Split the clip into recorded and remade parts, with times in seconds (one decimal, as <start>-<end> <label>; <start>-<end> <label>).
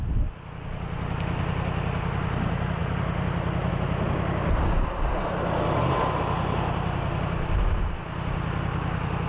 0.0-9.3 recorded